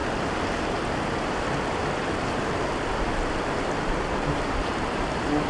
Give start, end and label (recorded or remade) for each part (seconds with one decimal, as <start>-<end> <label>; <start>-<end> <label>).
0.0-5.5 recorded